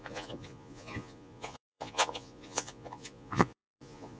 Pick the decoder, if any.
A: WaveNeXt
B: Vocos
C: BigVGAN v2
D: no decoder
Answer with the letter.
B